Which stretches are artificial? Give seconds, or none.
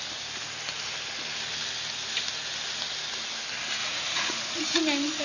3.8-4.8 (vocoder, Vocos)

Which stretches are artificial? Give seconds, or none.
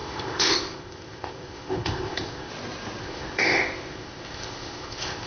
0.0-2.5 (codec, ZipCodec); 3.0-5.3